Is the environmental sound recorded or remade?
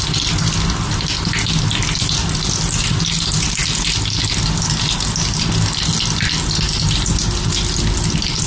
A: recorded